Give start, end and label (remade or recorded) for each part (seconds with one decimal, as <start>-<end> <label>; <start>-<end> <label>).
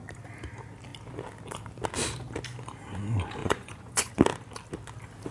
0.0-3.4 recorded; 3.4-4.1 remade; 4.1-5.3 recorded